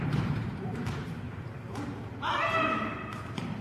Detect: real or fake fake